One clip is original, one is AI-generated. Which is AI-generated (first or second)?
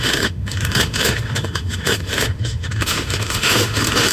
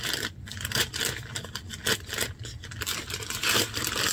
first